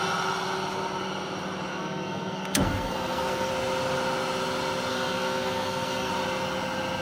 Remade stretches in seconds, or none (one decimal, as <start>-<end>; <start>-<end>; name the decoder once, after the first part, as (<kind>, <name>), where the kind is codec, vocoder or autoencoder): 1.7-3.5 (codec, SNAC); 4.9-6.1